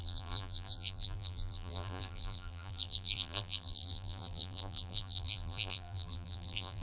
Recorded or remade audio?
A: remade